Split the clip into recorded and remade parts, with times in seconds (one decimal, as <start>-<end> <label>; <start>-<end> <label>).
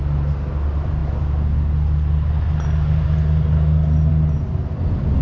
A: 0.0-5.2 recorded